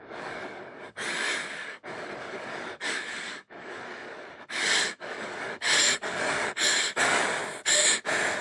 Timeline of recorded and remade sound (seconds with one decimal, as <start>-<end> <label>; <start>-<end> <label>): 0.0-7.4 remade; 7.4-8.4 recorded